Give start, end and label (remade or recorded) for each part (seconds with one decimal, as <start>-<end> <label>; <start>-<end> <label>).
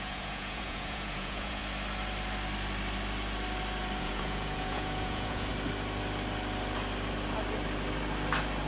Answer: 0.0-1.6 remade; 1.6-4.0 recorded; 4.0-5.5 remade; 5.5-8.7 recorded